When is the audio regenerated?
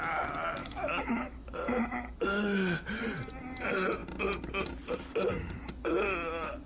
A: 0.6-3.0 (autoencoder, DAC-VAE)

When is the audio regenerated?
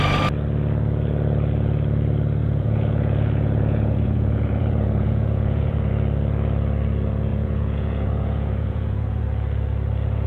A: 2.4-5.9 (vocoder, Vocos); 7.3-9.2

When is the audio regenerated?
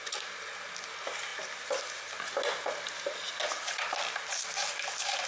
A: none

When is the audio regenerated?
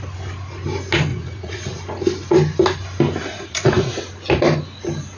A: 1.1-1.8 (vocoder, Vocos); 3.2-4.0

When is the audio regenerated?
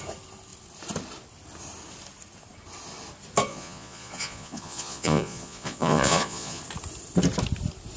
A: 3.5-6.6 (vocoder, Vocos)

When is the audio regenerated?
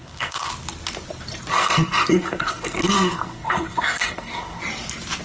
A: 0.0-0.5 (codec, SNAC); 1.5-4.6